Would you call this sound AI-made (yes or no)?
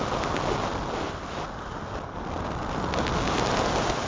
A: no